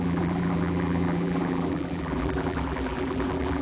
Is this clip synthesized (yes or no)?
yes